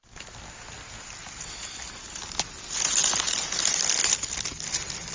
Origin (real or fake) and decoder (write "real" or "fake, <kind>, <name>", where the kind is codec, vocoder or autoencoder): real